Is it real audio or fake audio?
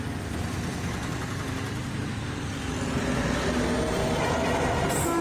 real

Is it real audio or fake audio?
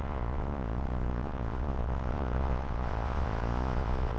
fake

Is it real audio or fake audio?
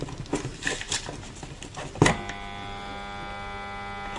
real